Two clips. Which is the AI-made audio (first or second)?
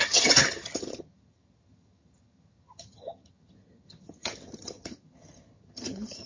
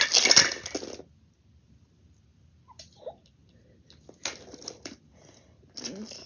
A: first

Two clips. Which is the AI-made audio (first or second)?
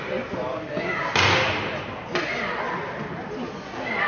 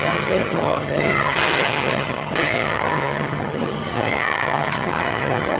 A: second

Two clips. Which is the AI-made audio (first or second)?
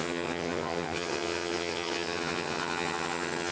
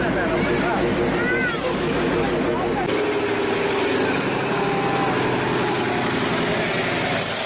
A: first